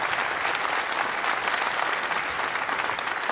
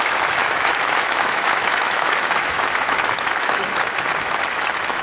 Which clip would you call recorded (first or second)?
first